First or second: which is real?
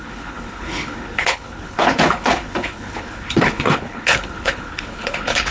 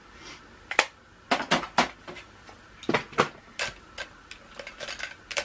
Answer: second